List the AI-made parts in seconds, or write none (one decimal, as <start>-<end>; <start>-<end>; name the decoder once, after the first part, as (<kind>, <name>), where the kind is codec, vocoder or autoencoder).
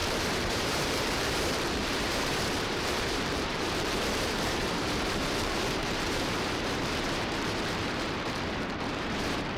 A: 0.0-9.6 (vocoder, BigVGAN v2)